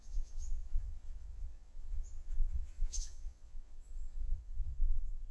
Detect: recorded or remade remade